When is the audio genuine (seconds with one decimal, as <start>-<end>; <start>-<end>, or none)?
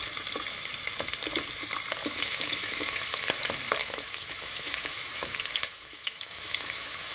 0.0-2.0; 3.4-3.8